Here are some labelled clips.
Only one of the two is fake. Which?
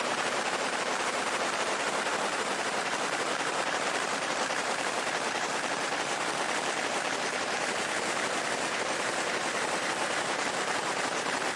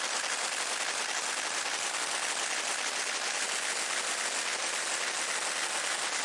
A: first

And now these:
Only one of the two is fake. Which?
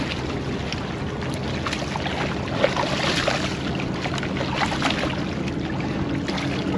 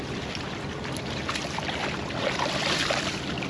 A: second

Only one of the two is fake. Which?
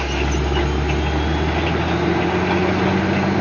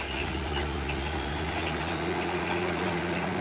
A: second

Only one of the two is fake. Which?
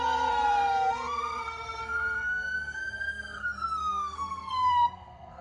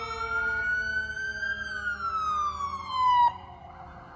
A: first